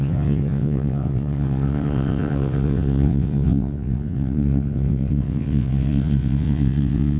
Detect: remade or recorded remade